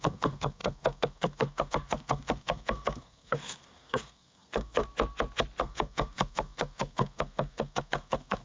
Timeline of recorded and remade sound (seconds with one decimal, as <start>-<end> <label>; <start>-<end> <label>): 0.0-4.8 remade; 4.8-5.6 recorded; 5.6-8.4 remade